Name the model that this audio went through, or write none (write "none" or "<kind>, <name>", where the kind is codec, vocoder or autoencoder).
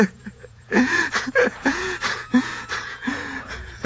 vocoder, Vocos